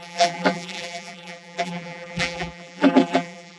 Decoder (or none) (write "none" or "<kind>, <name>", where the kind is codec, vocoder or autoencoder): vocoder, BigVGAN v2